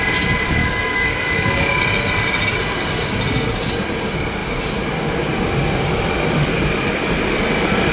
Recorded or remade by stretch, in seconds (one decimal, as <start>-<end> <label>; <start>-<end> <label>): 0.0-0.6 recorded; 0.6-1.8 remade; 1.8-7.9 recorded